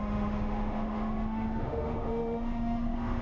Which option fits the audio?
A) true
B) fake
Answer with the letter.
B